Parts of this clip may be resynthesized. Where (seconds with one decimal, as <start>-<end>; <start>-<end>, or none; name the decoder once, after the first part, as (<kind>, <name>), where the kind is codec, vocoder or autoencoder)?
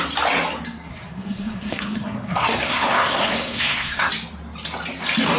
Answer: 0.9-4.1 (codec, SNAC)